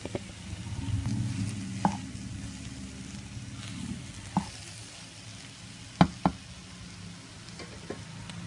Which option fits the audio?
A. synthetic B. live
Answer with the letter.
B